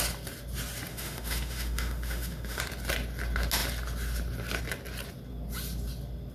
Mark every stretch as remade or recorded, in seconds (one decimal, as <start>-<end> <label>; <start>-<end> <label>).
0.0-0.9 recorded; 0.9-2.6 remade; 2.6-6.3 recorded